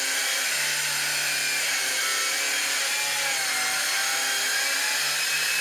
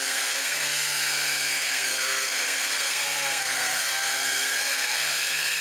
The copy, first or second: second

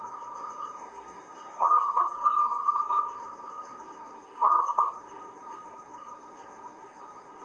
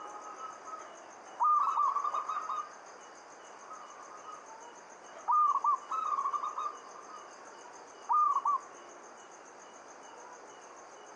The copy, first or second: first